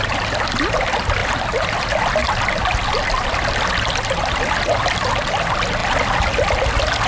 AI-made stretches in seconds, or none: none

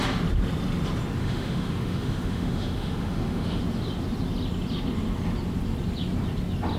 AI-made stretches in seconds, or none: 1.2-3.6

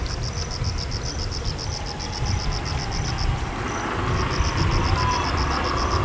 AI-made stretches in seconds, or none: none

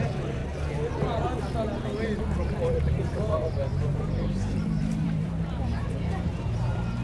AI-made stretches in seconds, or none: 0.0-0.4; 2.2-7.0

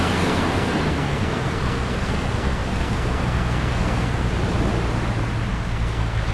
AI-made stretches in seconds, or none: 0.0-4.3; 5.5-6.3

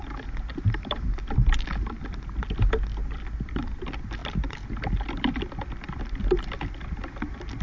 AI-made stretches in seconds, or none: 0.5-1.5; 3.0-3.7

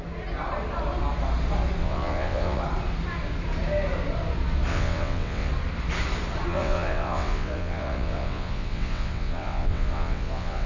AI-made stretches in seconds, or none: 1.8-2.6; 4.7-5.5; 6.5-10.7

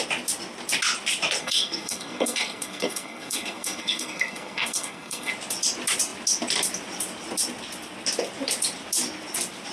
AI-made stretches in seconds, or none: 1.4-5.3